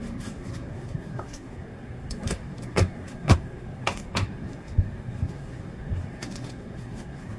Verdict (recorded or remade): remade